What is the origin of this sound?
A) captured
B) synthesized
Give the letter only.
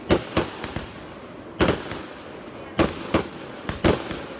A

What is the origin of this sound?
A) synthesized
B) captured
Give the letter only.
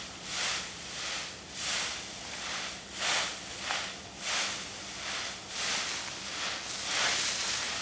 B